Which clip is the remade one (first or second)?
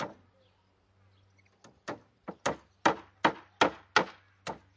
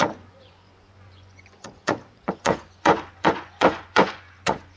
second